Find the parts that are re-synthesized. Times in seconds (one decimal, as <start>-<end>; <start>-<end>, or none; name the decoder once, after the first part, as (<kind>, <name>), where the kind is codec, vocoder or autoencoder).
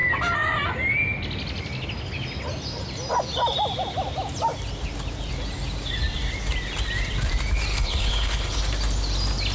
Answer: 7.7-8.6 (codec, HILCodec)